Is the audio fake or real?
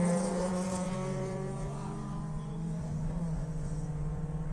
fake